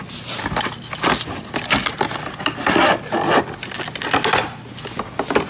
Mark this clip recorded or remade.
recorded